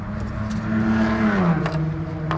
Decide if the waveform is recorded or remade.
recorded